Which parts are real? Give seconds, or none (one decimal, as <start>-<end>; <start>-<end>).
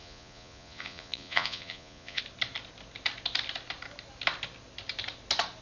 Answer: 2.2-5.6